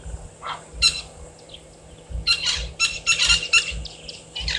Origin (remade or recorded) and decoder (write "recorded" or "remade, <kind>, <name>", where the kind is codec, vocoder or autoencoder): recorded